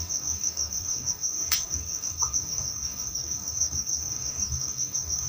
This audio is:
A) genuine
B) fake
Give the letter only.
B